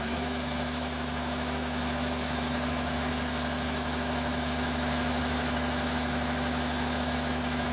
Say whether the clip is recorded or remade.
remade